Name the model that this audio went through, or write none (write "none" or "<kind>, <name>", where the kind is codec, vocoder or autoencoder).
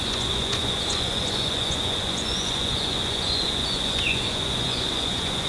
vocoder, Vocos